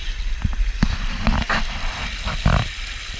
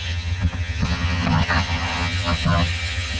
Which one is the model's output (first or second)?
second